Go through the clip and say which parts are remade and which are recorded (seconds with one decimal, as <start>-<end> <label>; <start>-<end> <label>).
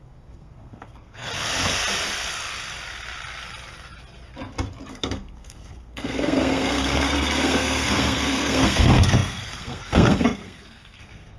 0.0-1.3 remade; 1.3-4.9 recorded; 4.9-11.4 remade